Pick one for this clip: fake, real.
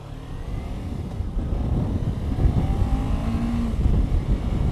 real